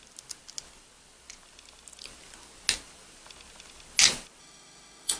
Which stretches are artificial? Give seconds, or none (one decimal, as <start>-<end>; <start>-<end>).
4.4-5.2

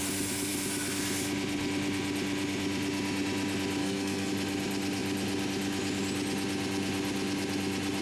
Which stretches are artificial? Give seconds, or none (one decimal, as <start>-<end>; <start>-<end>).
3.8-4.3

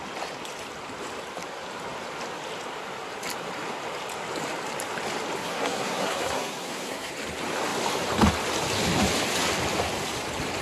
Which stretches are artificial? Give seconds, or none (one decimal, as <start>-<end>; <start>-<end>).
5.4-7.1

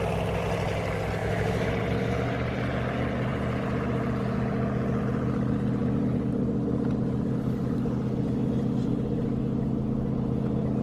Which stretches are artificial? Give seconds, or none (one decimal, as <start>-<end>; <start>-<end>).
1.2-1.7

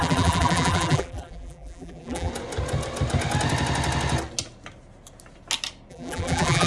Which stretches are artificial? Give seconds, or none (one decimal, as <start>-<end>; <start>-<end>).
0.0-2.3; 5.9-6.7

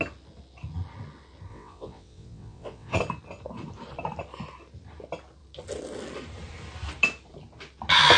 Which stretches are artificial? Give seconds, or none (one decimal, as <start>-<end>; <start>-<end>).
1.5-3.0

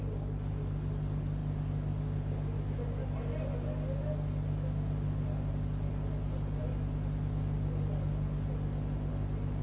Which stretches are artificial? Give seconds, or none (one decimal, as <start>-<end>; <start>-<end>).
0.0-1.4; 5.5-6.6; 9.1-9.6